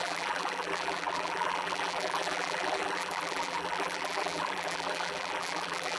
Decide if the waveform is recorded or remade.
remade